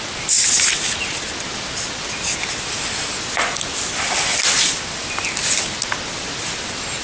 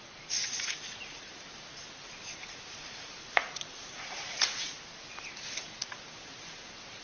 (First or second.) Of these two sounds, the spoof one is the second